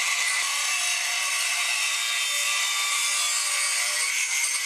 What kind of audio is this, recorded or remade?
recorded